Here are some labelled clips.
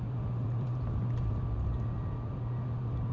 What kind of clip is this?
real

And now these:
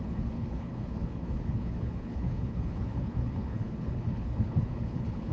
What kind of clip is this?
fake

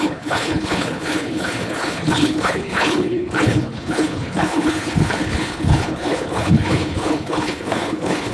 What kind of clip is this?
fake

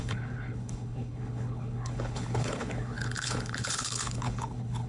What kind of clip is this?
fake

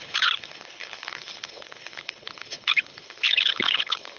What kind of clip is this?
fake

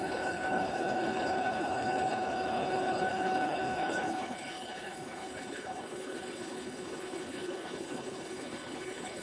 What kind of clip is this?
fake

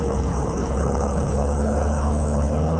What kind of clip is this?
fake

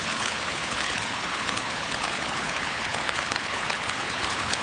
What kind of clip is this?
fake